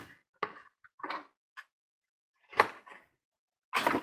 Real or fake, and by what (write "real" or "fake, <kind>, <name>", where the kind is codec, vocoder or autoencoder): real